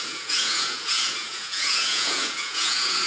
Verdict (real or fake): fake